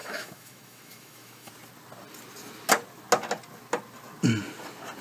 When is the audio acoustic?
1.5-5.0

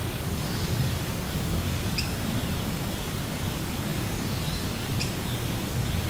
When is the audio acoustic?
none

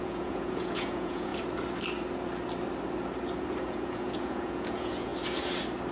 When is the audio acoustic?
1.3-3.6; 5.1-5.9

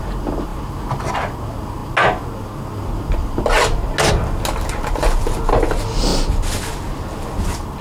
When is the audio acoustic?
0.0-7.8

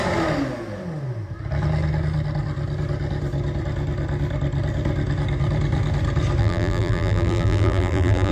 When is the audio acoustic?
0.0-6.4